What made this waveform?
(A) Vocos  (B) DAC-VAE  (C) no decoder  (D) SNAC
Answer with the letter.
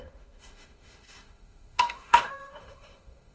B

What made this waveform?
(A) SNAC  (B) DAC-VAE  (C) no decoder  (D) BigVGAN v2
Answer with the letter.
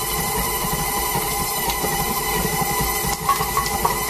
C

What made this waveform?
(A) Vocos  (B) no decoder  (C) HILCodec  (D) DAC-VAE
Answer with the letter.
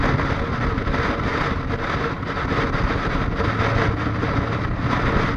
B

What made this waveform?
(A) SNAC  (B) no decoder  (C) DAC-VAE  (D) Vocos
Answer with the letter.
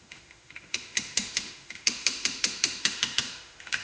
C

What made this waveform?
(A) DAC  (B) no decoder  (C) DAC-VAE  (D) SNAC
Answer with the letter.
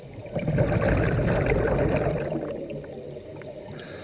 B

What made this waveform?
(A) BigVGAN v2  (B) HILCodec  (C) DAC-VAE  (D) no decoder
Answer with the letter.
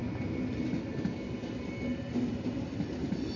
D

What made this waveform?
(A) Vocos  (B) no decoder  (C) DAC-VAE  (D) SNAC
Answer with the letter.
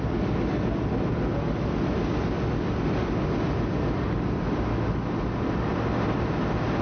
B